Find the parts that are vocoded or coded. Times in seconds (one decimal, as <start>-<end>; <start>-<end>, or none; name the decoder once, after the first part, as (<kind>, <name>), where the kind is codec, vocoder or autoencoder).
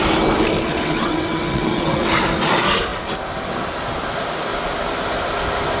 0.7-2.1 (vocoder, WaveNeXt)